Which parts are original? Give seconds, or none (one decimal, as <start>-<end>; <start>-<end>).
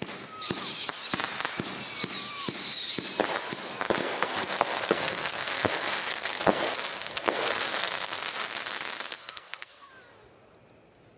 0.0-4.0; 8.3-9.1; 9.9-11.2